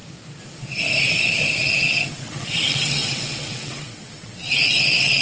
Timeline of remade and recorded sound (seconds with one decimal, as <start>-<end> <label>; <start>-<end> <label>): 0.0-1.6 recorded; 1.6-5.2 remade